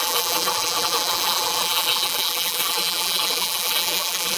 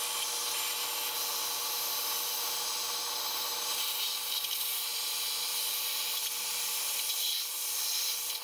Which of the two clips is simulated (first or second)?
first